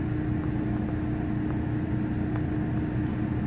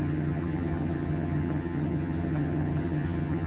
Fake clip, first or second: second